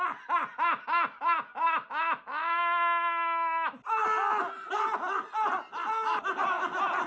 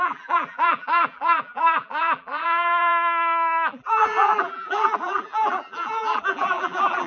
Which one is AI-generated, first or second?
second